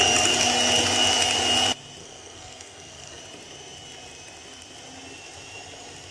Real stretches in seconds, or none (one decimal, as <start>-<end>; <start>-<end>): 0.0-2.0; 3.2-6.1